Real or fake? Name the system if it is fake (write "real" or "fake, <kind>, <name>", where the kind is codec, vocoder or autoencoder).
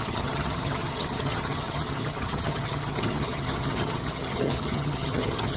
fake, vocoder, HiFi-GAN